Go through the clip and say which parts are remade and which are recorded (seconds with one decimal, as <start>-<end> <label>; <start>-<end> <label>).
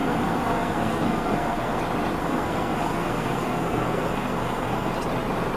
0.0-1.8 remade; 1.8-2.2 recorded; 2.2-4.9 remade; 4.9-5.6 recorded